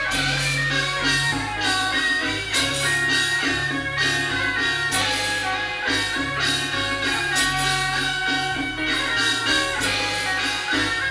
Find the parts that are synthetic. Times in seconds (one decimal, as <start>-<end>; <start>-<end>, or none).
none